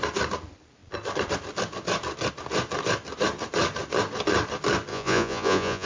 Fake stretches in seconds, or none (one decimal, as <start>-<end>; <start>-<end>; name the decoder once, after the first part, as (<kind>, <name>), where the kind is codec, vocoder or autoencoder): 4.9-5.9 (vocoder, Vocos)